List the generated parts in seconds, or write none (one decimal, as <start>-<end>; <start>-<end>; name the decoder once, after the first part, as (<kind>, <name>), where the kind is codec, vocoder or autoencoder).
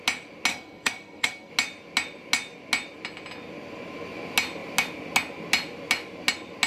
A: 0.5-1.5 (codec, SNAC)